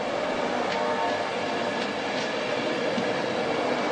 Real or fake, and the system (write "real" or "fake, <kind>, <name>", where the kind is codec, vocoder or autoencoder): real